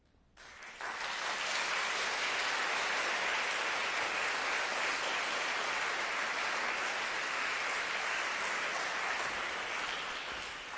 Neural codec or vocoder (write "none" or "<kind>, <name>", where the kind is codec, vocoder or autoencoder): none